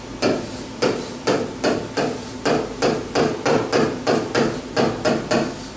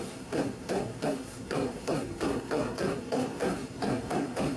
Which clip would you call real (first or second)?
first